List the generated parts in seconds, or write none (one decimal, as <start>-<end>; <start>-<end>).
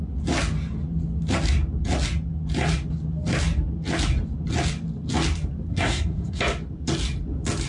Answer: 5.7-6.4